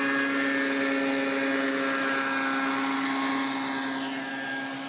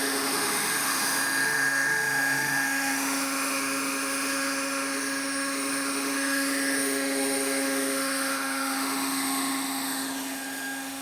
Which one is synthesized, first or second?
second